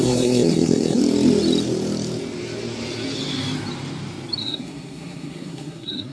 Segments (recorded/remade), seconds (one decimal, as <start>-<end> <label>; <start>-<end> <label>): 0.0-1.0 remade; 1.0-4.4 recorded; 4.4-6.1 remade